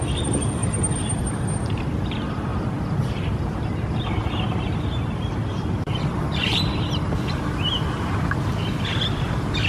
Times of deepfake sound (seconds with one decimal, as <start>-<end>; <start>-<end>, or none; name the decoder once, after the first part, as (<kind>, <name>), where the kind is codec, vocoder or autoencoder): 0.6-1.8 (vocoder, BigVGAN v2)